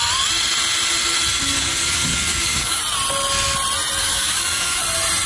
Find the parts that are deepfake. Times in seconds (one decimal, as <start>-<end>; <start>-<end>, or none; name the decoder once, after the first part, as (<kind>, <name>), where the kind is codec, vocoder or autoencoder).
1.3-2.8 (codec, DAC); 4.0-4.8